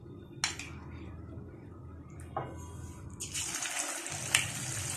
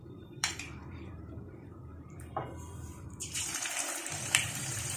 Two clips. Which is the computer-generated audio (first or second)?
second